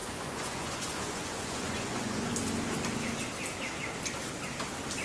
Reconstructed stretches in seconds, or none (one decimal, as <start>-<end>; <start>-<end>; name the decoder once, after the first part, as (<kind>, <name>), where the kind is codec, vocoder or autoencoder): 0.0-2.3 (vocoder, Vocos)